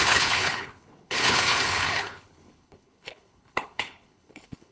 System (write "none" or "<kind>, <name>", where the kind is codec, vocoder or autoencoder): codec, HILCodec